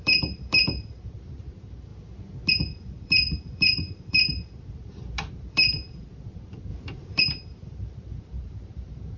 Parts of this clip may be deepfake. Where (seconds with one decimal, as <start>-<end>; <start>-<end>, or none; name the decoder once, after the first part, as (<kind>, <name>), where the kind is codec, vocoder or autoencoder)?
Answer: 0.0-1.9 (vocoder, BigVGAN v2); 2.5-9.2